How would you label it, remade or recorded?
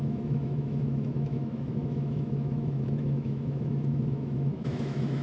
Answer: remade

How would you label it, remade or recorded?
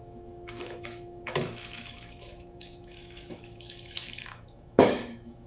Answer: remade